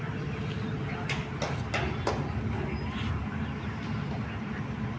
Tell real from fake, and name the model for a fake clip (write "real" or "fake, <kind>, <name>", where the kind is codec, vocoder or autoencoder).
real